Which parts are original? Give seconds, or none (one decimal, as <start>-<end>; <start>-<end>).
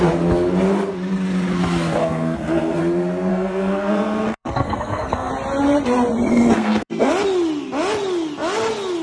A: 0.0-2.0; 2.8-3.3; 5.3-6.3; 7.1-9.0